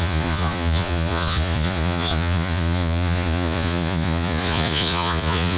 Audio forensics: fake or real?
fake